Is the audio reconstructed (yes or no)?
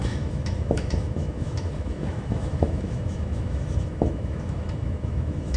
yes